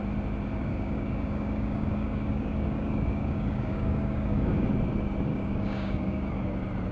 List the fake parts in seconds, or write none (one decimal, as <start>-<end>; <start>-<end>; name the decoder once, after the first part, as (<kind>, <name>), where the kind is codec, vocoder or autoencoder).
0.6-4.7 (codec, DAC); 5.3-6.5